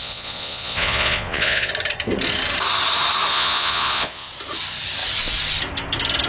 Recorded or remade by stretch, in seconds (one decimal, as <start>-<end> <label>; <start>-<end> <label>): 0.0-1.7 remade; 1.7-3.3 recorded; 3.3-4.3 remade; 4.3-6.3 recorded